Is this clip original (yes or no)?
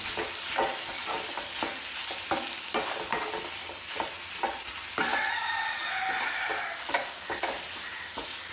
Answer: yes